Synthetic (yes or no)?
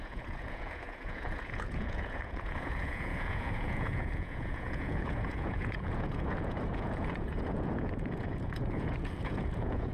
yes